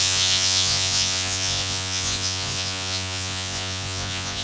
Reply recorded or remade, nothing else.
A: remade